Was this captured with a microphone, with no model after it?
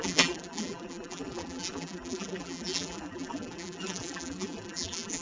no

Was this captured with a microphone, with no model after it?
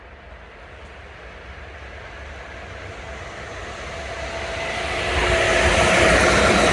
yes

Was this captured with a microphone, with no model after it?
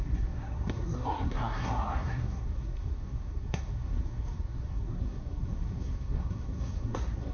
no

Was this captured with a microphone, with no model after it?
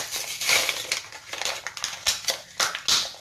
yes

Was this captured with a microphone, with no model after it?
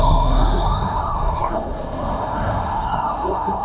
no